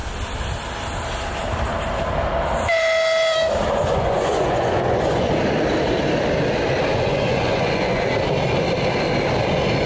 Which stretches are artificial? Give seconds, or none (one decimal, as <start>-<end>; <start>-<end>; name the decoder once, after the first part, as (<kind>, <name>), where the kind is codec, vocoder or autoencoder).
3.8-5.3 (vocoder, Vocos); 6.9-8.1